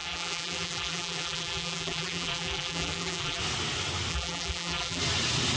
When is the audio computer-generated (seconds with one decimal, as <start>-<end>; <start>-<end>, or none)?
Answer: 0.0-3.4; 4.1-5.0